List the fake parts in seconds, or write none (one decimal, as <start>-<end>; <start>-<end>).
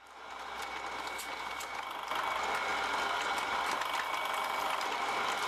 none